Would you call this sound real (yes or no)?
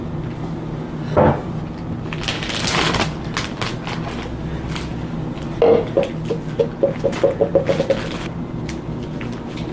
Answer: yes